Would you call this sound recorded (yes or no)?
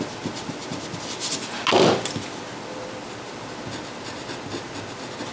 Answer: yes